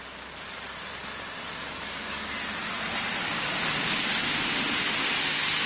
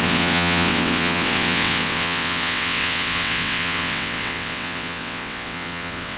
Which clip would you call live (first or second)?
first